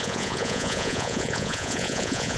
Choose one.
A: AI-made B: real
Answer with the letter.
A